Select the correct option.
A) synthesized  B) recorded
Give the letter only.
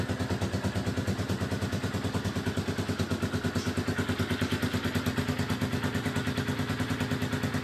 B